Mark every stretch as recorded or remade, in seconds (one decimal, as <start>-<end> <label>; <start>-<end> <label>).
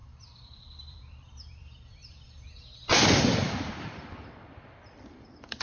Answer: 0.0-5.6 remade